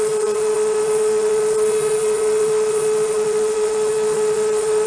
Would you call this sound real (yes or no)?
no